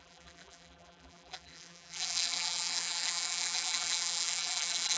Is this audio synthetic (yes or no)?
yes